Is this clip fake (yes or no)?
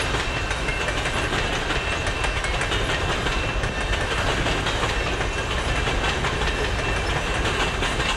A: no